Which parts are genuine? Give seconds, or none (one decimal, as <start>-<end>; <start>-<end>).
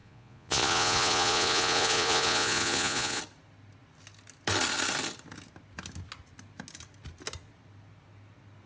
3.2-8.7